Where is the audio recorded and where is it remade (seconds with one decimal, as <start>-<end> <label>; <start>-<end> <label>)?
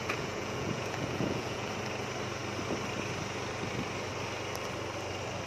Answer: 0.0-1.7 remade; 1.7-5.5 recorded